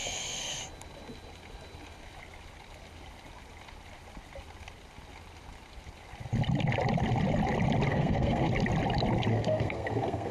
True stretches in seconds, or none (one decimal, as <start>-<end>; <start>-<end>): 0.6-7.9; 8.5-9.3